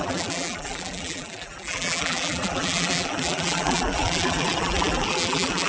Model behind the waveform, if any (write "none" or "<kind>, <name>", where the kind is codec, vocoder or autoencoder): vocoder, BigVGAN v2